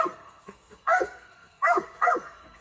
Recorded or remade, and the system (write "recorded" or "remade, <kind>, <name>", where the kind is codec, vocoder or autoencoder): remade, codec, SNAC